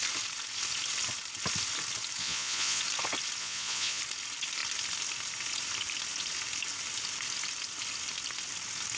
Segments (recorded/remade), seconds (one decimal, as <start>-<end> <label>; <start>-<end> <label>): 0.0-2.2 recorded; 2.2-2.8 remade; 2.8-3.4 recorded; 3.4-4.0 remade; 4.0-9.0 recorded

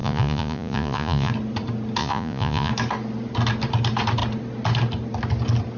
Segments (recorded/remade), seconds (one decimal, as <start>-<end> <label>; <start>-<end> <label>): 0.0-1.3 remade; 1.3-2.0 recorded; 2.0-2.7 remade; 2.7-5.8 recorded

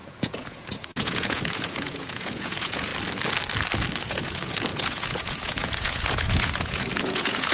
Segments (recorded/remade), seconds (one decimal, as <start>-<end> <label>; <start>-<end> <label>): 0.0-2.9 remade; 2.9-4.0 recorded; 4.0-7.5 remade

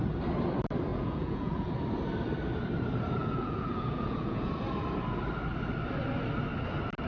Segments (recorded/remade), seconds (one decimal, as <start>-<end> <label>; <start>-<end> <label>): 0.0-0.9 recorded; 0.9-1.7 remade; 1.7-3.2 recorded; 3.2-4.5 remade; 4.5-7.1 recorded

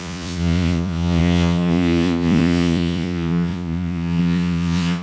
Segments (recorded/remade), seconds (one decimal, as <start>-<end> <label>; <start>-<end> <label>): 0.0-5.0 remade

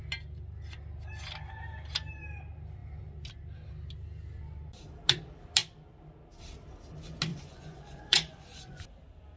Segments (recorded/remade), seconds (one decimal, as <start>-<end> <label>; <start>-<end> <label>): 0.0-7.3 recorded; 7.3-8.8 remade; 8.8-9.4 recorded